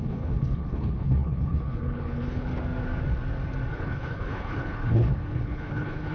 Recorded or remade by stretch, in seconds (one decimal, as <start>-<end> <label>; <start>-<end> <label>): 0.0-2.5 remade; 2.5-3.7 recorded; 3.7-6.1 remade